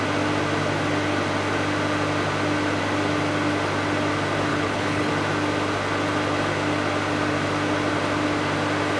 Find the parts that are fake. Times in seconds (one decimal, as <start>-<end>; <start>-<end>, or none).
4.5-5.1